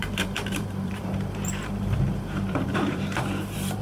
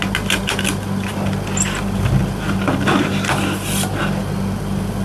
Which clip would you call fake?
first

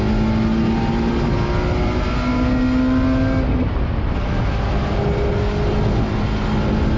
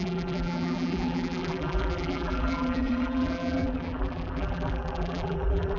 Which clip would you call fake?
second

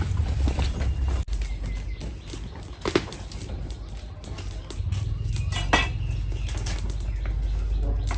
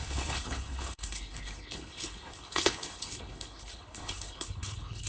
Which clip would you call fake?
second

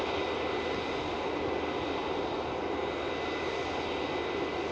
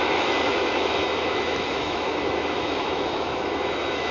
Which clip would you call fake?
second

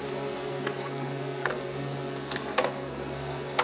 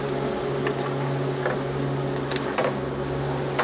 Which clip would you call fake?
first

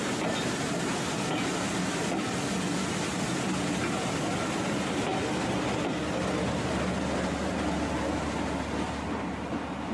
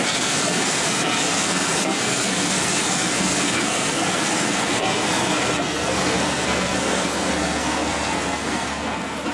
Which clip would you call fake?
second